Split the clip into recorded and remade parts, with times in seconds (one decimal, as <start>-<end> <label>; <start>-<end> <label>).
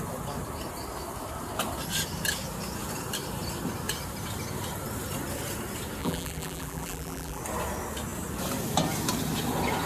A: 0.0-6.0 recorded; 6.0-7.4 remade; 7.4-9.9 recorded